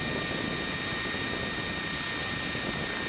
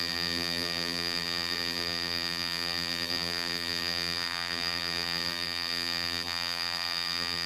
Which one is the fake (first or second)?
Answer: second